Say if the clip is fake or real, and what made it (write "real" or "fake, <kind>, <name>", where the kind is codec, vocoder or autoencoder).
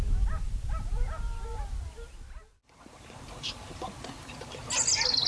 real